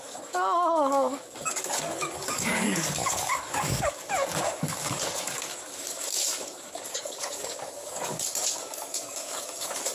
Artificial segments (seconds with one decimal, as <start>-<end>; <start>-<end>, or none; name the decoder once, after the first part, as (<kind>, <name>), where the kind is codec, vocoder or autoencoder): 0.0-9.9 (codec, DAC)